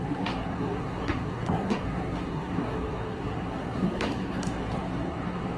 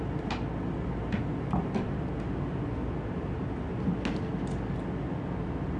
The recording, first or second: second